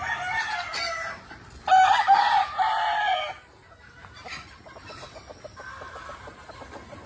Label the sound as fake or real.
real